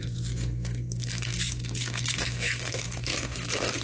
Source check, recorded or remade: remade